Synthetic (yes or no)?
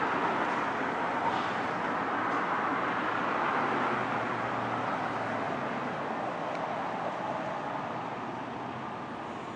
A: no